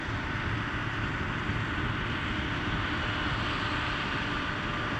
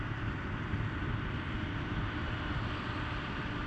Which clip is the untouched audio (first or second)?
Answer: first